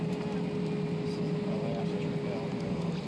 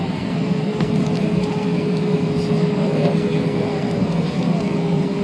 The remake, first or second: second